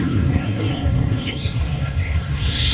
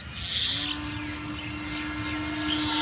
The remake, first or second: first